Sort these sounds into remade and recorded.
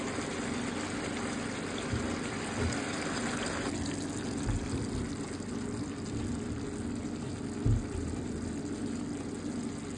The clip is recorded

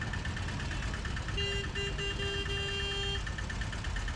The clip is recorded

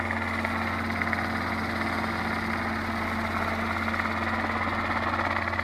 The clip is recorded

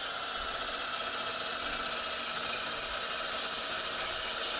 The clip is recorded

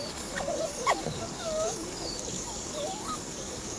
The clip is remade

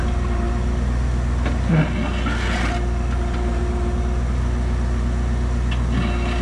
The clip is recorded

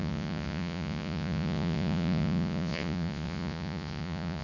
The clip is remade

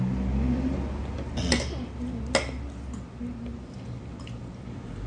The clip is recorded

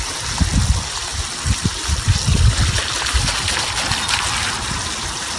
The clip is recorded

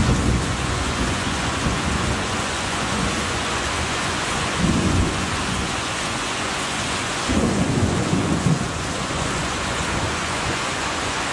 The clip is remade